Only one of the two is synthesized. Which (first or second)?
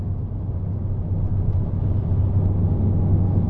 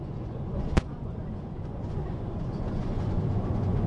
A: second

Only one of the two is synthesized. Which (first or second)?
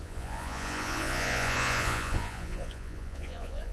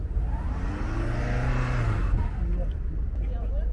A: first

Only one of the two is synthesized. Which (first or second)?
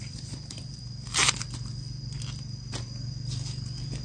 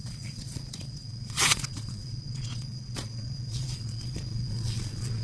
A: second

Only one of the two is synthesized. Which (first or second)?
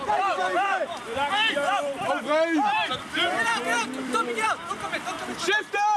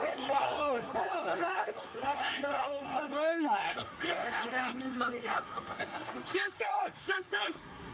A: second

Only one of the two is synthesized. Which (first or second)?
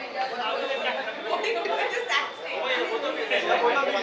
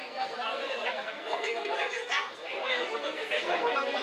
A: second